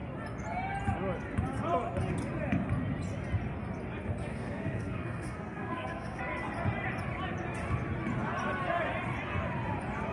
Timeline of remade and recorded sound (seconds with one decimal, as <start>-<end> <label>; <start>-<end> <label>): 0.0-4.3 recorded; 4.3-6.2 remade; 6.2-10.1 recorded